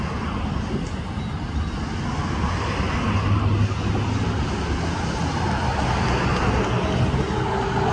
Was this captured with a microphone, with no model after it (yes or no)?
yes